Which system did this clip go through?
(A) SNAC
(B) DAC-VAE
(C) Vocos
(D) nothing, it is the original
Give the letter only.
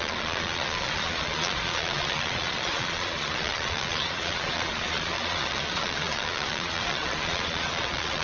C